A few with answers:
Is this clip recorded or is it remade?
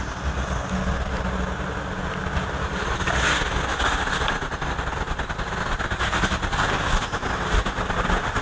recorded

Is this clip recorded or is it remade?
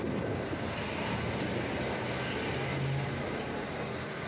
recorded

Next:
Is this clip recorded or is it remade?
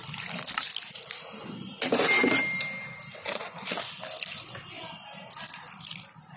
recorded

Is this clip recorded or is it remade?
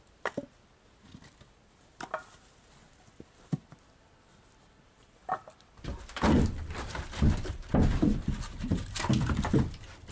recorded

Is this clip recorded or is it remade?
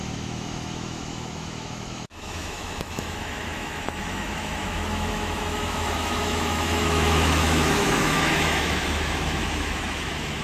remade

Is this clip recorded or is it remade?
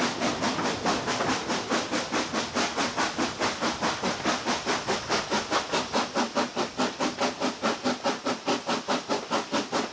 recorded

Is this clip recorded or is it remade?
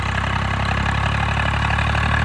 recorded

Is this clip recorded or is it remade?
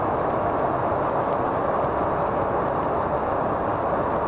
recorded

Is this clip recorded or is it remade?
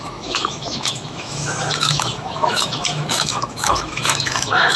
remade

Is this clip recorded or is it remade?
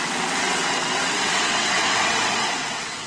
remade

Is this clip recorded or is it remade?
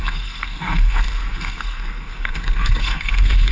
remade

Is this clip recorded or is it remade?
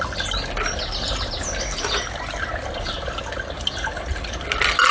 recorded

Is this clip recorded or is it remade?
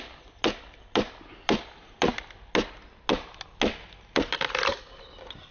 recorded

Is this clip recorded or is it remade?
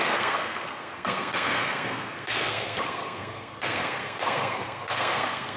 remade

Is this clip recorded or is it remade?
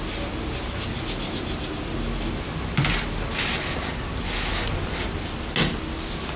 recorded